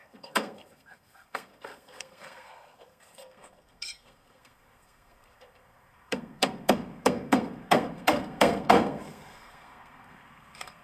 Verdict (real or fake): fake